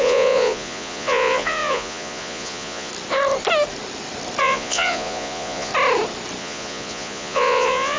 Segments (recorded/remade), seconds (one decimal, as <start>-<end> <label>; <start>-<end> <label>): 0.0-2.9 remade; 2.9-4.4 recorded; 4.4-5.7 remade; 5.7-6.4 recorded; 6.4-8.0 remade